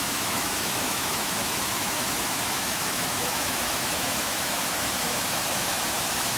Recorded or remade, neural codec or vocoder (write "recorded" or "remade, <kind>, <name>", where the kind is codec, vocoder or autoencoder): remade, autoencoder, DAC-VAE